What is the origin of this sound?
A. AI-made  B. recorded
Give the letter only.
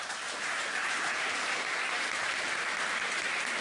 A